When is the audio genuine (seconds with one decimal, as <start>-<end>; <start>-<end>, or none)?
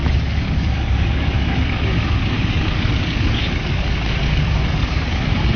none